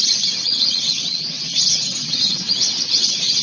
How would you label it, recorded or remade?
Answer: remade